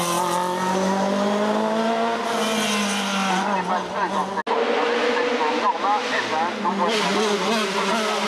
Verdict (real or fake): real